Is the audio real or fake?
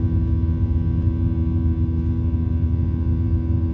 real